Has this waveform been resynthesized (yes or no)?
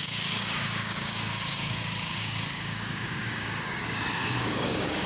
yes